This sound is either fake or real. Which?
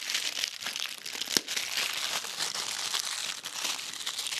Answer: real